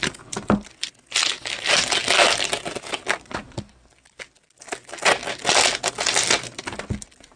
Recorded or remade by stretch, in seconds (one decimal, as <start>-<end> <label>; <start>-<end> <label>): 0.0-7.4 recorded